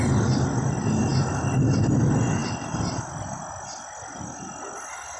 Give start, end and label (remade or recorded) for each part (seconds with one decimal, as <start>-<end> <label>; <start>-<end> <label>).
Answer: 0.0-5.2 recorded